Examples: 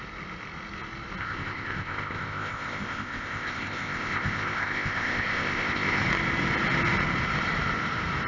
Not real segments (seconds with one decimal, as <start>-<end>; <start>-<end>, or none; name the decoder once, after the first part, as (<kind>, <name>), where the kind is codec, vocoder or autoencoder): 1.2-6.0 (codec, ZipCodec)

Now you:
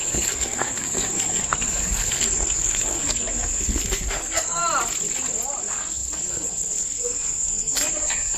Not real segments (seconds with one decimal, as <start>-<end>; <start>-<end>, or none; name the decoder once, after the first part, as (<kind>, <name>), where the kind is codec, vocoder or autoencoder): 0.0-4.6 (codec, SNAC); 5.6-8.4

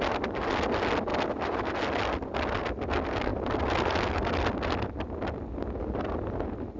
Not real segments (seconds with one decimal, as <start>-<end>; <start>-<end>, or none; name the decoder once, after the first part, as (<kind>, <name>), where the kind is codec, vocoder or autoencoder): none

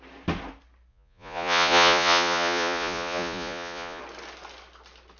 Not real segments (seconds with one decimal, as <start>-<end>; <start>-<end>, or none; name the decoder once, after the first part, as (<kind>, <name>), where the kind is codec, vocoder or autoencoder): 0.9-4.0 (vocoder, Vocos)

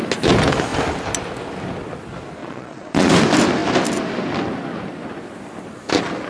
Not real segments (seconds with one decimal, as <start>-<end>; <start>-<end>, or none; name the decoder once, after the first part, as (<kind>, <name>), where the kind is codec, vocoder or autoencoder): 2.4-3.1 (vocoder, Vocos)

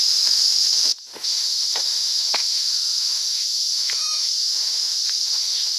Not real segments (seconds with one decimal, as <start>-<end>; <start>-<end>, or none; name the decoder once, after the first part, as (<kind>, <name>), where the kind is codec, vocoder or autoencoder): 0.0-5.8 (autoencoder, DAC-VAE)

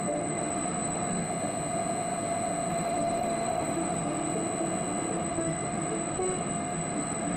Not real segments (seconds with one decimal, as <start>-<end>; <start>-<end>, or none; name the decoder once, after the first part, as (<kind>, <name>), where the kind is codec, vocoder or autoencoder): 0.0-1.2 (autoencoder, DAC-VAE); 2.7-4.3; 5.1-7.4